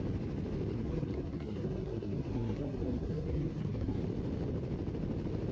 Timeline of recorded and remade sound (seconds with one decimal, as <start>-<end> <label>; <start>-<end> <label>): 0.0-0.7 recorded; 0.7-4.0 remade; 4.0-5.5 recorded